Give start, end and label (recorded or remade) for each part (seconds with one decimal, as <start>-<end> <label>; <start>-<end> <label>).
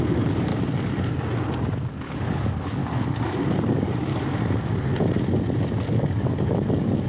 0.0-0.5 remade; 0.5-2.0 recorded; 2.0-2.8 remade; 2.8-3.6 recorded; 3.6-4.1 remade; 4.1-6.1 recorded; 6.1-7.1 remade